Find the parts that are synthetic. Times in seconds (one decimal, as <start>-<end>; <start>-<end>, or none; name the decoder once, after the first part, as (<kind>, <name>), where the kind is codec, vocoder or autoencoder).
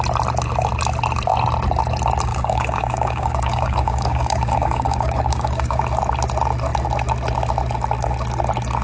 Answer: 2.3-5.8 (codec, DAC)